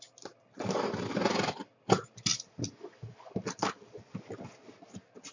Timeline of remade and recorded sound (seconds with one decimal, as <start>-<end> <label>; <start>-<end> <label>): 0.0-5.3 recorded

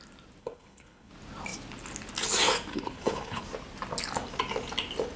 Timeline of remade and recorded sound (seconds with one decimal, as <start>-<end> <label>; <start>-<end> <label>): 0.0-0.4 recorded; 0.4-1.1 remade; 1.1-2.7 recorded; 2.7-3.4 remade; 3.4-5.2 recorded